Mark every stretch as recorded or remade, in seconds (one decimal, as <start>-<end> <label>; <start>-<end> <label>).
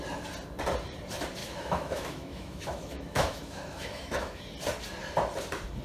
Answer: 0.0-1.4 recorded; 1.4-4.4 remade; 4.4-5.8 recorded